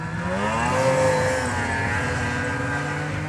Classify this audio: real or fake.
real